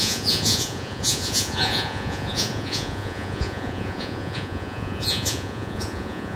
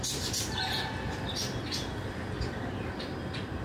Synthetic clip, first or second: first